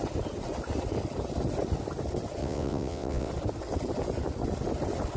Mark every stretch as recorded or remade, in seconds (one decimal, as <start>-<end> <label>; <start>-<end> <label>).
0.0-2.4 recorded; 2.4-3.3 remade; 3.3-5.2 recorded